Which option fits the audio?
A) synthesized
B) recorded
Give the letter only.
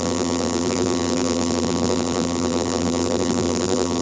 A